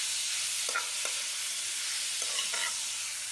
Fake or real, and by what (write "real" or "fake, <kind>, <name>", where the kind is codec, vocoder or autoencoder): real